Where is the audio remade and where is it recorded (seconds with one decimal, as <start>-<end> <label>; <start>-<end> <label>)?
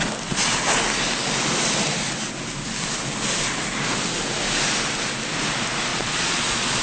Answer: 0.0-5.9 recorded; 5.9-6.8 remade